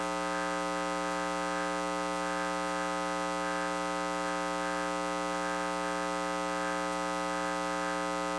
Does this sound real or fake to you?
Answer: real